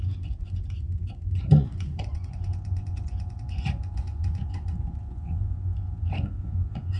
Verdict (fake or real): fake